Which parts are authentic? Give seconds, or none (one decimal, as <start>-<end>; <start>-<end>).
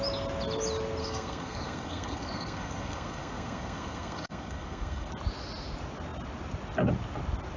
0.0-1.0; 5.1-7.6